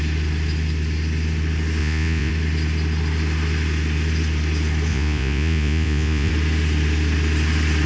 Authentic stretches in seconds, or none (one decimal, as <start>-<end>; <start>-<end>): 0.0-1.8; 2.3-4.9; 6.3-7.9